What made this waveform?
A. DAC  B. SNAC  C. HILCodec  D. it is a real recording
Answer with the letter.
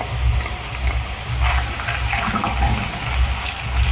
D